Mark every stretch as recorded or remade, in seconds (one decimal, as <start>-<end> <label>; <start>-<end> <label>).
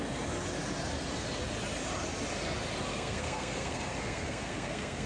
0.0-2.9 recorded; 2.9-5.1 remade